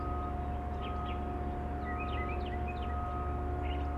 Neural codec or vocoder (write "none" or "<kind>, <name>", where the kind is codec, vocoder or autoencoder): none